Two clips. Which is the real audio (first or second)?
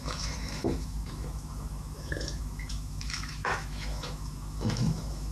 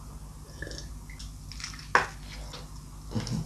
second